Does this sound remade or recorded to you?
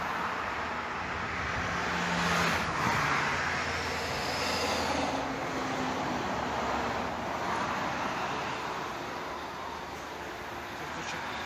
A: recorded